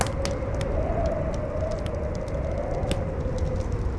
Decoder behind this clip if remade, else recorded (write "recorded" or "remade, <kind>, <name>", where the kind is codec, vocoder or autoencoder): recorded